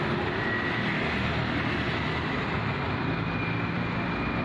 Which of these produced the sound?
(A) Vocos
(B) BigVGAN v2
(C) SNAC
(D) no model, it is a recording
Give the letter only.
D